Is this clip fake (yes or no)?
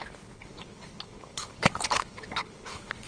yes